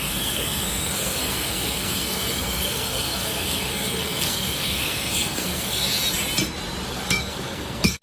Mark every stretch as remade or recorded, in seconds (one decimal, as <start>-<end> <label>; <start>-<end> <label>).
0.0-6.0 remade; 6.0-6.9 recorded; 6.9-8.0 remade